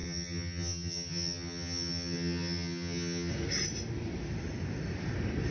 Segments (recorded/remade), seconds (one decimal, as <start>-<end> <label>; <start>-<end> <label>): 0.0-3.3 remade; 3.3-5.5 recorded